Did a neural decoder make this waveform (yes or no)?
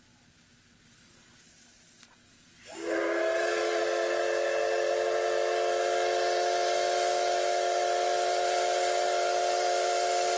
no